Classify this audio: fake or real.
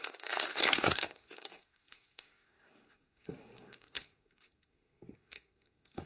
fake